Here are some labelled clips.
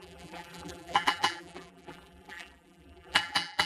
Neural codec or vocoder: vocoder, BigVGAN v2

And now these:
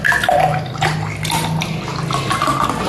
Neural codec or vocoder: none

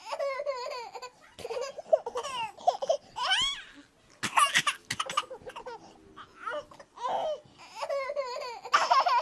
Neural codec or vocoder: none